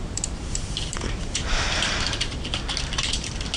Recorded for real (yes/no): no